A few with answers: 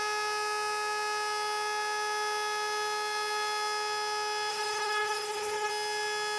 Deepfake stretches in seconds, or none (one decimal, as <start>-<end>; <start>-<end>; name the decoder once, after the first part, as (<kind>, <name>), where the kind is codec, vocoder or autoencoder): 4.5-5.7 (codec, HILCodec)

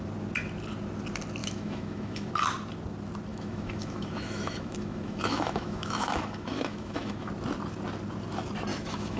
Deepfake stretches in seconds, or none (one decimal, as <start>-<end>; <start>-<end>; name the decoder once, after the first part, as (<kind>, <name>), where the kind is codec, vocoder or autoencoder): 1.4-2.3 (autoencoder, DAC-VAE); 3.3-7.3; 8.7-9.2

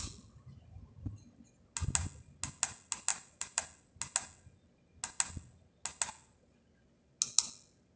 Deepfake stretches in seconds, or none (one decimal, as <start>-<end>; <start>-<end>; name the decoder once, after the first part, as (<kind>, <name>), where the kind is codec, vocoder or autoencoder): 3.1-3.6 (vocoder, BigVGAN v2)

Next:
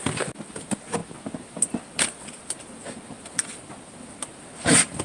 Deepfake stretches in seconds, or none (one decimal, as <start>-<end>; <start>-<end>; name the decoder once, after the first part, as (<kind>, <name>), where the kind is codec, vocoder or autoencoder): none

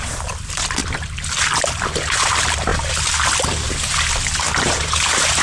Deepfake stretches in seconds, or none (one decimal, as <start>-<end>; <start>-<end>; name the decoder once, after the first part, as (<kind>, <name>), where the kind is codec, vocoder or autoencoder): none

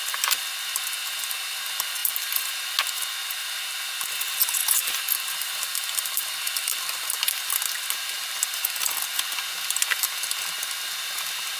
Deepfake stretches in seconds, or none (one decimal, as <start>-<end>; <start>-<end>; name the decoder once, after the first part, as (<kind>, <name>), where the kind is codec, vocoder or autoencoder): 2.0-2.5 (vocoder, BigVGAN v2); 4.6-7.5

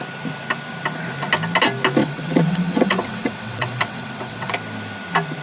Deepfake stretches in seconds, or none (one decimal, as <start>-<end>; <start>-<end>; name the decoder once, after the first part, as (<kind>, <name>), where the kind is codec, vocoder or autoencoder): 2.0-4.5 (vocoder, WaveNeXt)